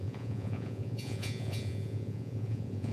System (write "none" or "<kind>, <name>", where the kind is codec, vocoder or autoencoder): vocoder, Vocos